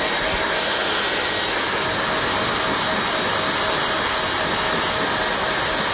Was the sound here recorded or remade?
recorded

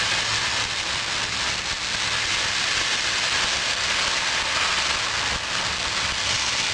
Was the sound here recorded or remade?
recorded